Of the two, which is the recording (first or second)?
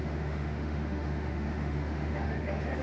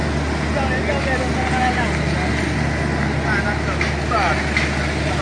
second